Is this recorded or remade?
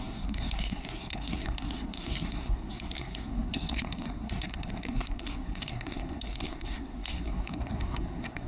remade